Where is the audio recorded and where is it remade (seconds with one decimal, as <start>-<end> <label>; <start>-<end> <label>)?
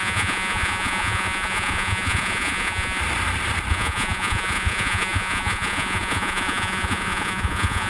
0.0-3.0 remade; 3.0-3.7 recorded; 3.7-7.9 remade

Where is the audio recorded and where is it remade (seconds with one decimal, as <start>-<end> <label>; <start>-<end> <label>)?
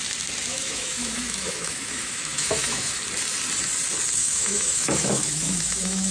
0.0-0.5 recorded; 0.5-3.0 remade; 3.0-4.2 recorded; 4.2-6.1 remade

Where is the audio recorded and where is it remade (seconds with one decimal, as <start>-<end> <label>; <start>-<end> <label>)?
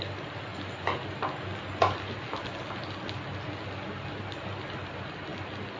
0.0-5.8 recorded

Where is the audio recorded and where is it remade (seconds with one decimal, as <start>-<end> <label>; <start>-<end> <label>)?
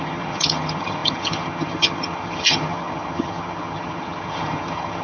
0.0-5.0 remade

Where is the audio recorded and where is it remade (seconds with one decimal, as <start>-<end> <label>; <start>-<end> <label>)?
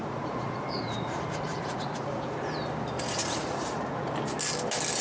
0.0-2.5 remade; 2.5-3.2 recorded; 3.2-4.1 remade; 4.1-5.0 recorded